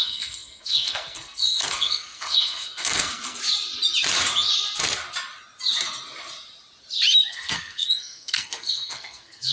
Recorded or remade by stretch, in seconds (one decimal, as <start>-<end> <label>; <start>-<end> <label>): 0.0-3.4 remade; 3.4-7.3 recorded; 7.3-9.5 remade